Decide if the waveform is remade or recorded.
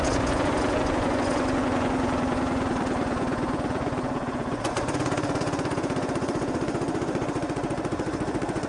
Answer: remade